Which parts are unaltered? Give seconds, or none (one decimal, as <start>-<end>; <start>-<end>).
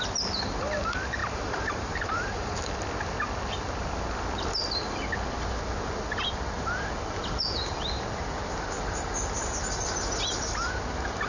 0.0-1.2; 2.6-11.3